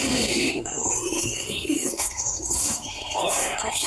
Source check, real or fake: fake